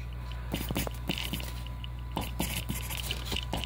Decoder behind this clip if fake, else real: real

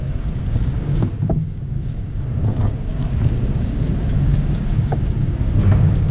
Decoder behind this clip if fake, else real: fake, codec, DAC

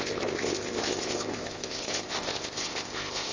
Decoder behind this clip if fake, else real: fake, codec, ZipCodec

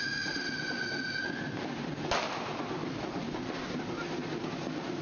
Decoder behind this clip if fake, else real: real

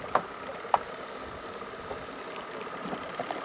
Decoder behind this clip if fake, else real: real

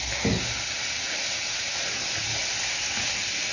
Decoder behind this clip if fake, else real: real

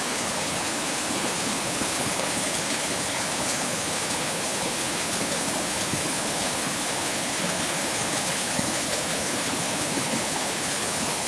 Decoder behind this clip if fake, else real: fake, codec, HILCodec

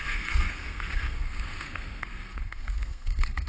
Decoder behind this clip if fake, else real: fake, codec, SNAC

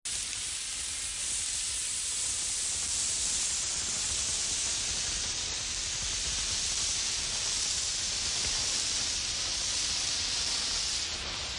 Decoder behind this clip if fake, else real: real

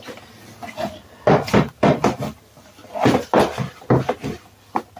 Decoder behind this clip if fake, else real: fake, vocoder, BigVGAN v2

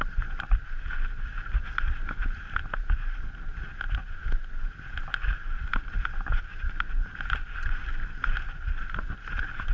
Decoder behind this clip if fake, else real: real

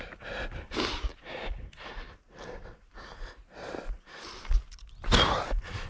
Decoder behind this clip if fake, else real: real